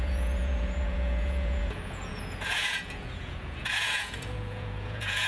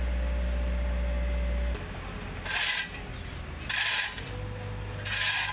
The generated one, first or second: first